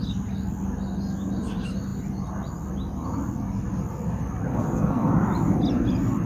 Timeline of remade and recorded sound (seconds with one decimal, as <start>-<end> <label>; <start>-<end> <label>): 0.0-4.5 recorded; 4.5-5.1 remade; 5.1-6.3 recorded

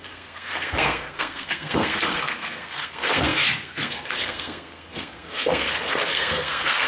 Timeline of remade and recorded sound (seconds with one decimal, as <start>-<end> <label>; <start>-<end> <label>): 0.0-6.9 remade

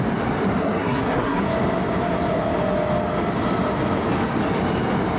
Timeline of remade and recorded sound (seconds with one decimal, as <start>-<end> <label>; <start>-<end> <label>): 0.0-0.6 recorded; 0.6-1.4 remade; 1.4-5.2 recorded

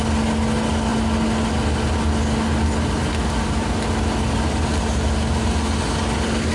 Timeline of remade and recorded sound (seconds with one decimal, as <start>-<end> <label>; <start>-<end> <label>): 0.0-6.5 recorded

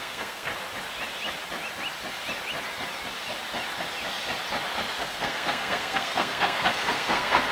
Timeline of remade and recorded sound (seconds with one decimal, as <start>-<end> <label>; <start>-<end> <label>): 0.0-0.5 remade; 0.5-5.0 recorded; 5.0-7.5 remade

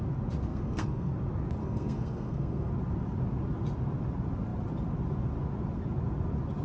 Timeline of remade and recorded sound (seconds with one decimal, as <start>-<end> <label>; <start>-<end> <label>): 0.0-0.5 recorded; 0.5-1.1 remade; 1.1-1.6 recorded; 1.6-2.7 remade; 2.7-6.6 recorded

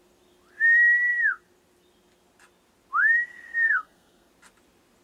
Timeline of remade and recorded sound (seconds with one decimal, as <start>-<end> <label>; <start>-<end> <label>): 0.0-3.5 recorded; 3.5-4.3 remade; 4.3-5.0 recorded